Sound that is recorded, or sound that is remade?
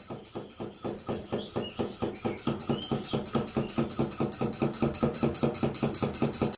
recorded